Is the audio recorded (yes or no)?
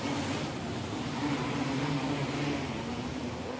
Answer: yes